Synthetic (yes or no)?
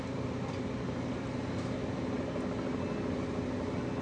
no